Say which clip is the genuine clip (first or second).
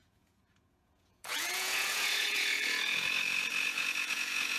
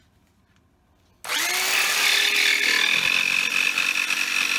second